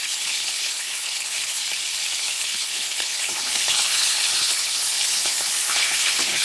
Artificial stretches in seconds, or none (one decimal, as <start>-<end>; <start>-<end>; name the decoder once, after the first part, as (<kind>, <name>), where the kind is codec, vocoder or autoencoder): 0.0-1.6 (codec, HILCodec); 2.2-6.4